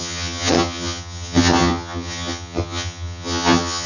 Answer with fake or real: fake